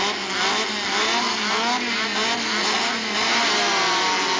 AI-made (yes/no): no